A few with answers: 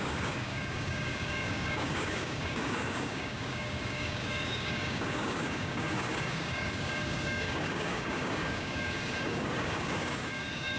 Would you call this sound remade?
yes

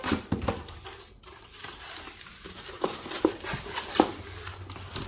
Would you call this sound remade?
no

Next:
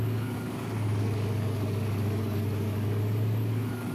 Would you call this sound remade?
yes